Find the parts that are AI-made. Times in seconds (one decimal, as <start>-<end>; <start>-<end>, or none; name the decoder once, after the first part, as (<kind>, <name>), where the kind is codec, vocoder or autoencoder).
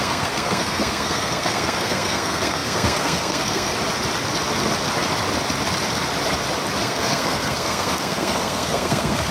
0.0-3.7 (codec, SNAC); 6.8-9.3